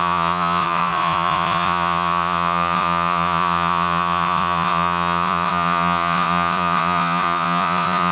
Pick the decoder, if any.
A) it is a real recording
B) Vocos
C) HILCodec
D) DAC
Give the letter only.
B